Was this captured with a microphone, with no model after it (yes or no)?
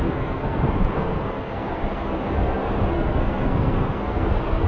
no